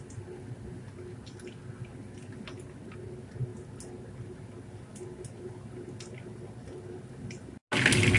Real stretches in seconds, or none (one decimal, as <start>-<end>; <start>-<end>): 0.0-8.2